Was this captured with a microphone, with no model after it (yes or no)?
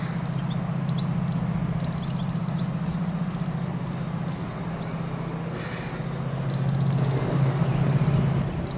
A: yes